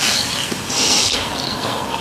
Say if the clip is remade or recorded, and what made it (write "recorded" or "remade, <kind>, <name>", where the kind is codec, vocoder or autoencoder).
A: remade, codec, SNAC